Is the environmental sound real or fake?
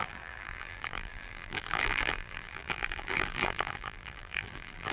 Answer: fake